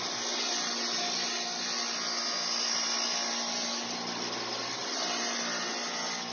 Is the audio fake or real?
real